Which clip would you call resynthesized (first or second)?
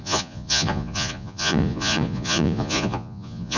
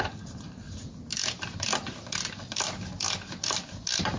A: first